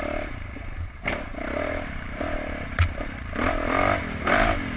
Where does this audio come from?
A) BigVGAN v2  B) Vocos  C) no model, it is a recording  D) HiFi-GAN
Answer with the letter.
A